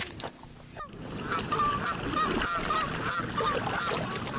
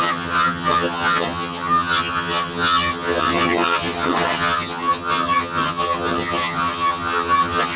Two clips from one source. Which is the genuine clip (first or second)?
first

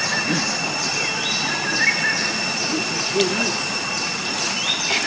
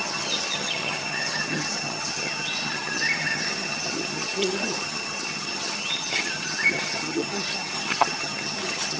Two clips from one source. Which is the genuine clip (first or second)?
first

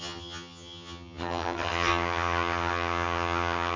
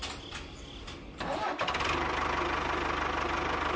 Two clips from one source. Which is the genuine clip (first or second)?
second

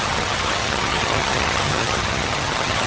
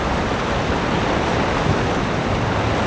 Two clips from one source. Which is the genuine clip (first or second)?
second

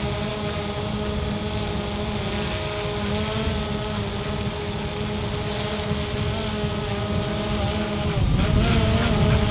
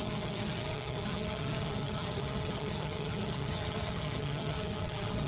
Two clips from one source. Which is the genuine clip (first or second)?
first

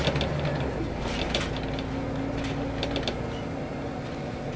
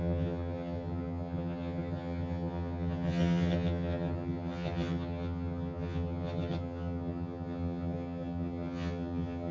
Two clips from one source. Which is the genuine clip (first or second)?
first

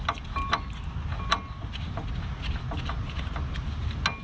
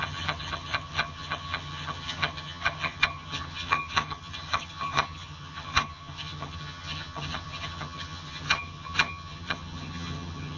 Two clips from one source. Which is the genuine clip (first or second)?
first